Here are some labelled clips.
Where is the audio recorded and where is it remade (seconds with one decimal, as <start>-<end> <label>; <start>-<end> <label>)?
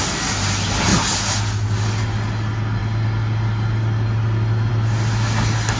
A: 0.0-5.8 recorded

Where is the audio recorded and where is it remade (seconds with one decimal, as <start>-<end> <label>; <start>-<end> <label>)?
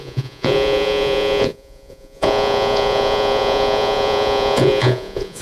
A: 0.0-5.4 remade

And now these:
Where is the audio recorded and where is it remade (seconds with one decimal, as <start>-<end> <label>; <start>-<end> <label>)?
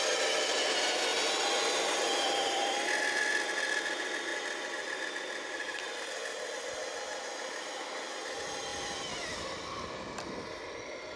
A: 0.0-11.2 recorded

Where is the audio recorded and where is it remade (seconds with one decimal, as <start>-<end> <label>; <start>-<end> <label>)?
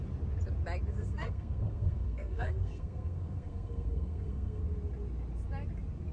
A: 0.0-0.9 recorded; 0.9-4.6 remade; 4.6-6.1 recorded